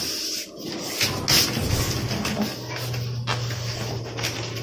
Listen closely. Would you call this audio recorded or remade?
recorded